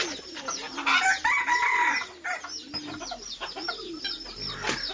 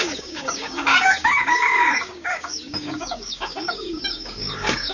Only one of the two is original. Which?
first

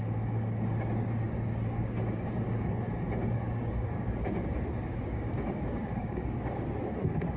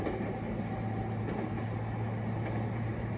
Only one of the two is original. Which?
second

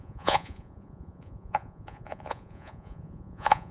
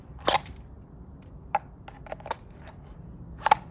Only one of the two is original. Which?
second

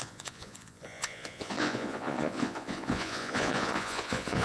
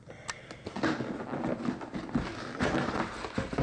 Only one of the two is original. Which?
second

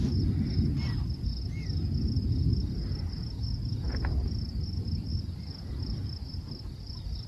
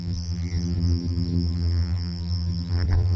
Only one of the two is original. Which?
first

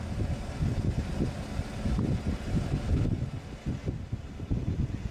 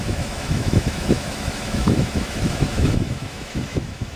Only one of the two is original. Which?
first